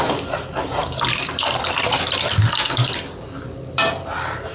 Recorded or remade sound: remade